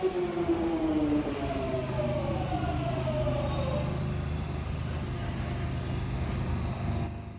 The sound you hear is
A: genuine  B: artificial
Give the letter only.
A